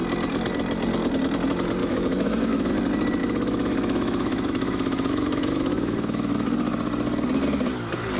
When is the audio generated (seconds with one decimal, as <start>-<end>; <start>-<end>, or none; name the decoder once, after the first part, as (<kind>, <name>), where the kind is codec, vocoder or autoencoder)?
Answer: 1.8-2.7 (autoencoder, DAC-VAE); 3.2-6.3